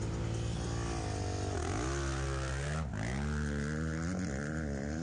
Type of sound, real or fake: real